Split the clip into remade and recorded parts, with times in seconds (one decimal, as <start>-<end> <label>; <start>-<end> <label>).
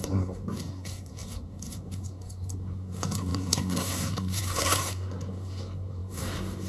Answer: 0.0-6.7 remade